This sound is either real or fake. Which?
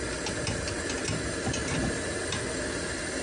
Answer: real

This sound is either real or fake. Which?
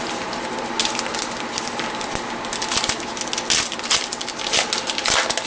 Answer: real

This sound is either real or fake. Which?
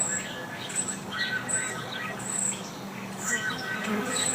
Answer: fake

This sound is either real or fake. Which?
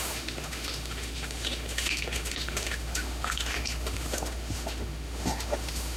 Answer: fake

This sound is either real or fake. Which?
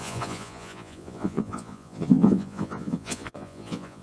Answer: fake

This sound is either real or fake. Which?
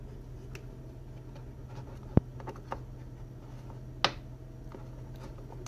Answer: real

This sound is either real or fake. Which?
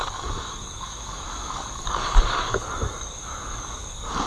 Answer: fake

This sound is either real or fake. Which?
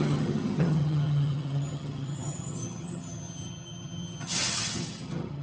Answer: fake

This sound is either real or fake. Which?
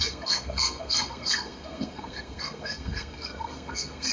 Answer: fake